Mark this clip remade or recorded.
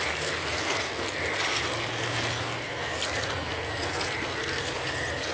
recorded